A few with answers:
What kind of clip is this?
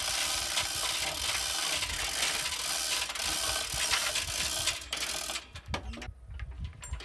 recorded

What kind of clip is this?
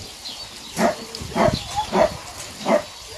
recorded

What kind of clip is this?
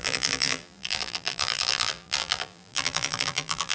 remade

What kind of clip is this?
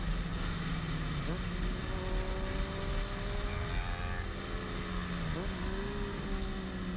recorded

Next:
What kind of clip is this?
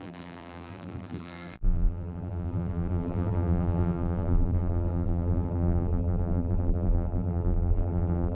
remade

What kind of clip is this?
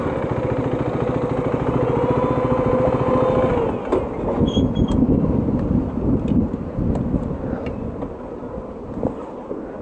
recorded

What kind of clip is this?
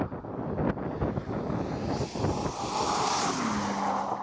recorded